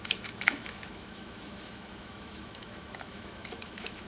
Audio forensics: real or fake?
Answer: fake